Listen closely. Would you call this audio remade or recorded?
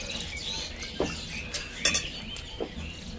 recorded